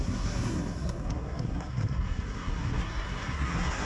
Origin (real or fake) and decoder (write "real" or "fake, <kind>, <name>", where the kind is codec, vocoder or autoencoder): fake, codec, SNAC